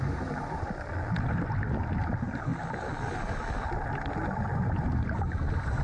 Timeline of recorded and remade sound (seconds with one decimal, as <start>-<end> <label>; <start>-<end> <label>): 0.0-5.8 recorded